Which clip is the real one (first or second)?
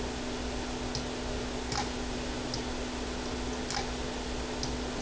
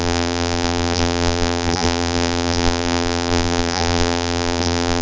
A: first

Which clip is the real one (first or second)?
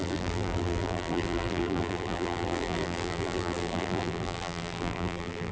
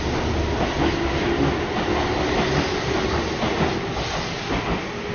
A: second